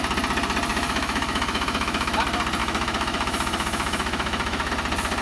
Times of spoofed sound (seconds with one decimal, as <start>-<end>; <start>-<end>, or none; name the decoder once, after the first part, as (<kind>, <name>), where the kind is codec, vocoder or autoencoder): 0.7-2.1 (autoencoder, DAC-VAE); 2.6-4.7